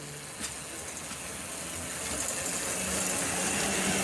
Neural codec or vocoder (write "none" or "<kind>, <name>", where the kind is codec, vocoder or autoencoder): none